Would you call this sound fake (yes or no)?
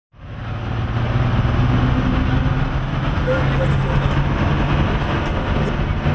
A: no